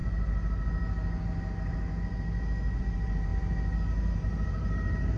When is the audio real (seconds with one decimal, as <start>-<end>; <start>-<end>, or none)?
0.0-2.8; 3.3-4.1